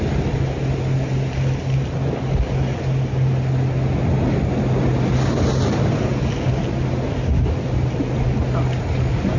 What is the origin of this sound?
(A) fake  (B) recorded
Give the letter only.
B